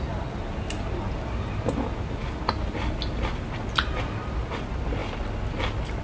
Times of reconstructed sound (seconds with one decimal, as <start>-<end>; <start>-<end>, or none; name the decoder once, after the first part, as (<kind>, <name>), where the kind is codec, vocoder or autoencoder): none